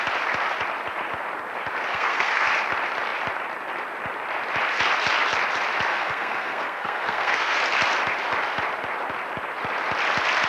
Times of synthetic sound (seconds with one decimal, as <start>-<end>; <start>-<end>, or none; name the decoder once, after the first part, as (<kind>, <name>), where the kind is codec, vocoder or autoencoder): 1.9-2.5 (codec, SNAC); 5.9-7.6